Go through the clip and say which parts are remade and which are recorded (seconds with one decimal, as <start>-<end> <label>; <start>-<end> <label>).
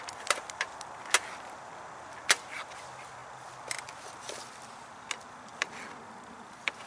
0.0-6.9 recorded